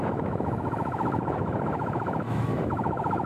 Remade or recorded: remade